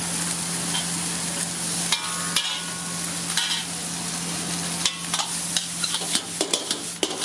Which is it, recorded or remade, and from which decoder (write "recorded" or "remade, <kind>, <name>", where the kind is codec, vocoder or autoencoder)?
recorded